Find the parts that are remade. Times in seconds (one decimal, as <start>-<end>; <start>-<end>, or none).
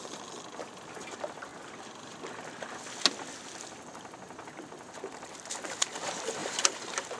6.4-7.2